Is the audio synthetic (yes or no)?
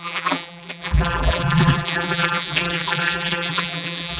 yes